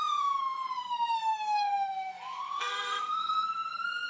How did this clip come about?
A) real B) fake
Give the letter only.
B